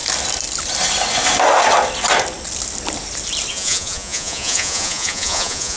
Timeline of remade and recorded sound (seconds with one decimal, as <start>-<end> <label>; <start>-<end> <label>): 0.0-3.5 recorded; 3.5-5.8 remade